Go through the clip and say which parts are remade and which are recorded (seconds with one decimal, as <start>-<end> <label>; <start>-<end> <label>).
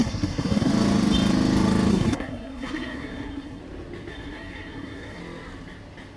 0.0-0.7 remade; 0.7-1.9 recorded; 1.9-3.6 remade; 3.6-4.1 recorded; 4.1-5.2 remade; 5.2-6.2 recorded